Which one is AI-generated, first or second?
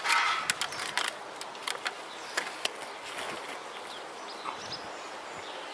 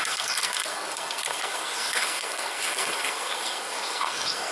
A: second